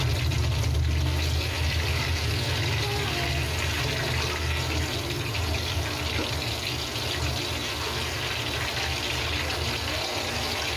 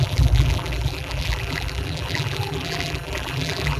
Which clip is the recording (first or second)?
first